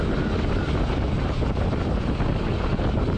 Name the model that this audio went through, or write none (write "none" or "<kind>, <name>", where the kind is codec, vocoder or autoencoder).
vocoder, BigVGAN v2